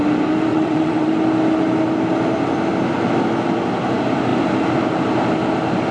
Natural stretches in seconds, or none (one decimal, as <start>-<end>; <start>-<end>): 0.0-0.5; 1.1-5.9